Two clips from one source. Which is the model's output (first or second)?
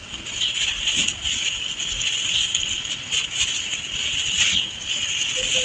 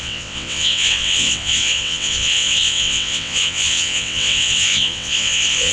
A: second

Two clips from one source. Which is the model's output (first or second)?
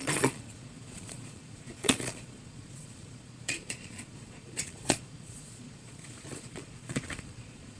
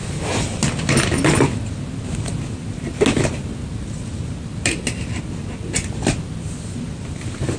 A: first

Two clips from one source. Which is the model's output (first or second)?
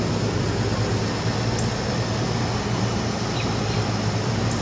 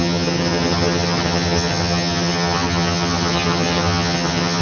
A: second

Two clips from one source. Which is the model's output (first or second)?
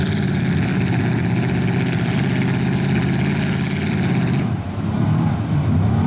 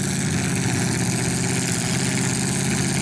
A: first